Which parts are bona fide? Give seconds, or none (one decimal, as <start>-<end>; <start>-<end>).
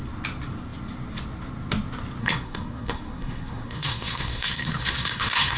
0.0-2.2